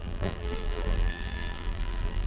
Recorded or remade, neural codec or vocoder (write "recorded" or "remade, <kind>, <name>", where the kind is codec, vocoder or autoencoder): remade, vocoder, BigVGAN v2